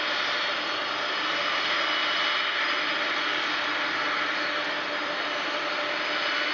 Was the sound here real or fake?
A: real